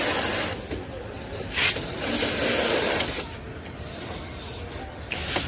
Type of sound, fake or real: real